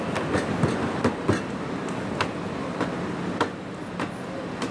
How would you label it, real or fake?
real